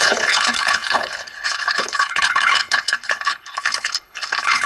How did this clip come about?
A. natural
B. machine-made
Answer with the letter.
B